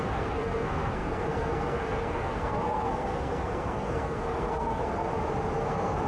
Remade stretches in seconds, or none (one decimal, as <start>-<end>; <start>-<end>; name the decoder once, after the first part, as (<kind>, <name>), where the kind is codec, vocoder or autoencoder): 0.0-5.1 (codec, SNAC); 5.6-6.1